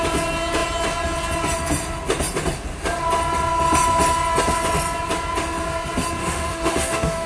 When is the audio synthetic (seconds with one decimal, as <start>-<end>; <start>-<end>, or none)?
6.2-7.3